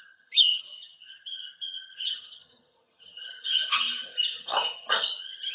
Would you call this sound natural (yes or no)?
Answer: no